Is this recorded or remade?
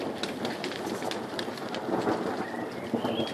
recorded